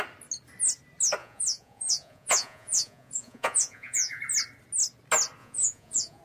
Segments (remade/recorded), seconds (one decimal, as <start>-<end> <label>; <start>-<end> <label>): 0.0-1.2 recorded; 1.2-4.2 remade; 4.2-5.4 recorded; 5.4-6.2 remade